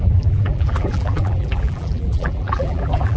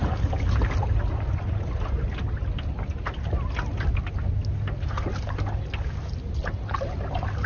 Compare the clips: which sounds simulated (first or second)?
first